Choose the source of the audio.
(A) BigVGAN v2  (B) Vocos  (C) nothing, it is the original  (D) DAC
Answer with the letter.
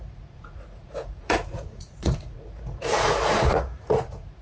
B